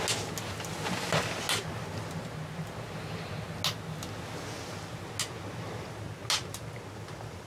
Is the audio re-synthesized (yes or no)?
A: no